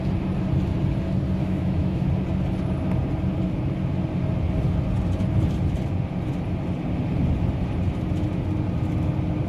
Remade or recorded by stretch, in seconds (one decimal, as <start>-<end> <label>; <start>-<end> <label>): 0.0-1.4 recorded; 1.4-2.1 remade; 2.1-9.5 recorded